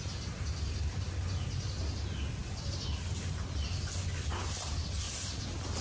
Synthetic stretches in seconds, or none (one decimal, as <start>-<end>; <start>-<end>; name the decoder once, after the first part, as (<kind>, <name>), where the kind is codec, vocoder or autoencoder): none

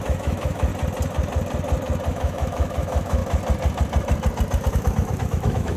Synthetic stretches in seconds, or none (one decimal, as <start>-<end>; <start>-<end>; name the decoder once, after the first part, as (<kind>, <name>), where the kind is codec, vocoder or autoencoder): 0.0-0.7 (autoencoder, DAC-VAE); 2.1-3.2; 4.7-5.8

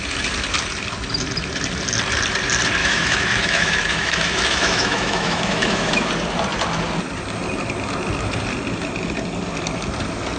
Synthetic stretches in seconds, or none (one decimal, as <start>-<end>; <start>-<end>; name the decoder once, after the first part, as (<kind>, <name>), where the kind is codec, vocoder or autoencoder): 2.8-6.1 (autoencoder, DAC-VAE)

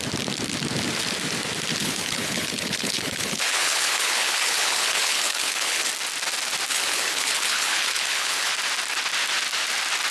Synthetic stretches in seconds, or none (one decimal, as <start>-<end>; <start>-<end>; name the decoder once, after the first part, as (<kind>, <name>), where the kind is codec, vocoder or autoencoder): 1.8-5.9 (codec, HILCodec); 6.7-8.5

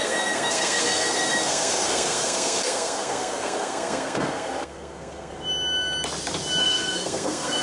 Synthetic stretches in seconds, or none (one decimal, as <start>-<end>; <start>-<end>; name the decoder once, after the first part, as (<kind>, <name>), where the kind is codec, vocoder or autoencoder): 0.0-5.3 (codec, SNAC); 6.6-7.6